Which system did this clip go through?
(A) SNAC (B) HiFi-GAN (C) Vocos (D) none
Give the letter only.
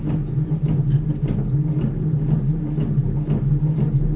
D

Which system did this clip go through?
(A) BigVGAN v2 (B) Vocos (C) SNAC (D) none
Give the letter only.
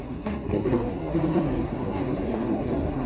C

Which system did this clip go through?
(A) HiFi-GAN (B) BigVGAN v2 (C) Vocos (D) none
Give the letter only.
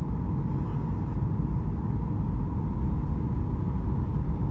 D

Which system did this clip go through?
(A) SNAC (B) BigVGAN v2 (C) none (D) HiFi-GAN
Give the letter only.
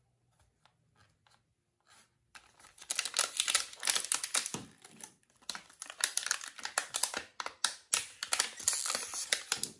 C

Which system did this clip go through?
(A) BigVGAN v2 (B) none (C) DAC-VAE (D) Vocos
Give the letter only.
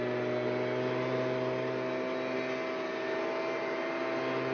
B